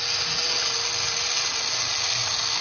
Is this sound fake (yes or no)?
no